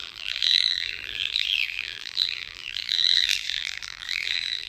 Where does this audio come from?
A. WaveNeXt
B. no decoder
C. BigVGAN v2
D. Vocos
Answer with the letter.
C